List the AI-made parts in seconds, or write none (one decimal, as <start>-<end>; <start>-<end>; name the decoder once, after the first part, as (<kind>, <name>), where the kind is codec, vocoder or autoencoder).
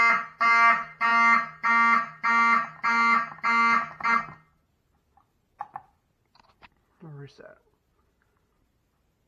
none